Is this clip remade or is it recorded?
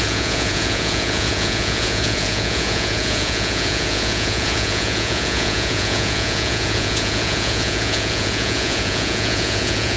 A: remade